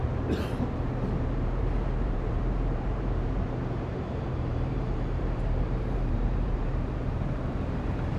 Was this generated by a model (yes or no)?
yes